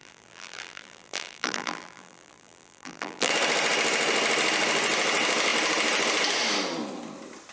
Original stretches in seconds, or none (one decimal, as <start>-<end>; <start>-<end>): 3.3-7.5